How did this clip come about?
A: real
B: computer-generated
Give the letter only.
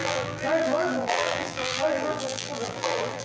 B